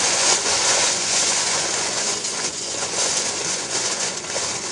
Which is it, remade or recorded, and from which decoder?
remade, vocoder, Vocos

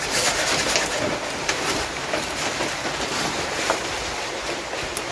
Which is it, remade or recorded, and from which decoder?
recorded